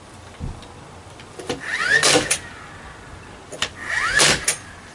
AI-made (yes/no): no